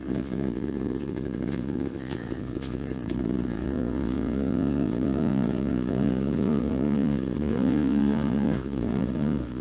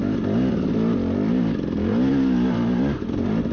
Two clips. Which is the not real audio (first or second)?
first